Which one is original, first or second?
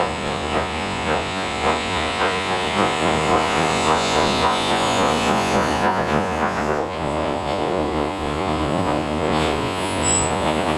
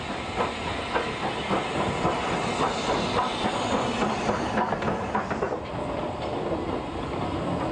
second